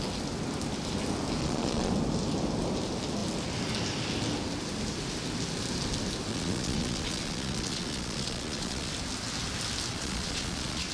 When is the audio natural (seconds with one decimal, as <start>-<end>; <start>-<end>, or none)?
0.0-1.4; 1.9-6.3; 8.9-9.9